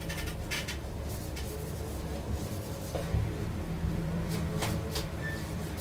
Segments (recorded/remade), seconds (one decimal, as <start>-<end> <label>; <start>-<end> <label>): 0.0-2.1 recorded; 2.1-5.8 remade

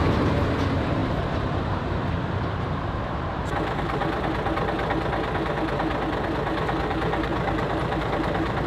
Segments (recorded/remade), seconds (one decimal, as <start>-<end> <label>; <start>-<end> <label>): 0.0-4.0 remade; 4.0-6.8 recorded; 6.8-8.7 remade

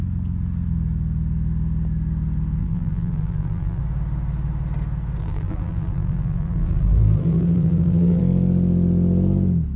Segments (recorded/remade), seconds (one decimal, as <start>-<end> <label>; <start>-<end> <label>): 0.0-2.6 recorded; 2.6-3.8 remade; 3.8-5.2 recorded; 5.2-8.2 remade; 8.2-9.8 recorded